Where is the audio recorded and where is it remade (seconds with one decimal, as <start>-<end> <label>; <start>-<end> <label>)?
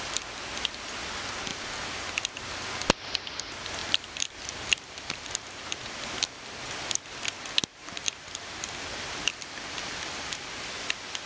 0.0-1.5 recorded; 1.5-2.1 remade; 2.1-3.8 recorded; 3.8-6.6 remade; 6.6-7.7 recorded; 7.7-10.6 remade; 10.6-11.3 recorded